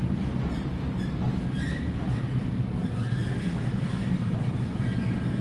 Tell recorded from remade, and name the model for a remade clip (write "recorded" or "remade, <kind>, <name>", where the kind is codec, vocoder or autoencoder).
recorded